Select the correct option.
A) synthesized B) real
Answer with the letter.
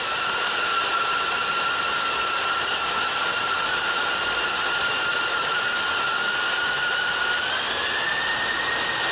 B